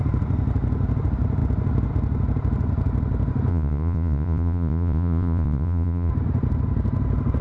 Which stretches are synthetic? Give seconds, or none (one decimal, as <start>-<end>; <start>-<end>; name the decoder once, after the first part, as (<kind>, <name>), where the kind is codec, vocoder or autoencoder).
3.5-6.1 (vocoder, Vocos)